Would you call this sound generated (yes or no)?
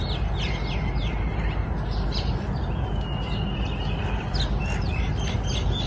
no